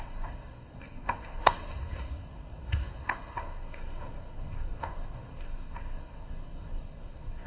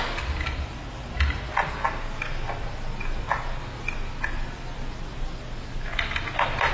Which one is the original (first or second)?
second